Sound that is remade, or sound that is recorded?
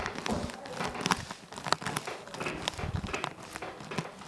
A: recorded